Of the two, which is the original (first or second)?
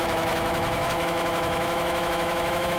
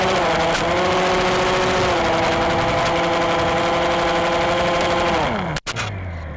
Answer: second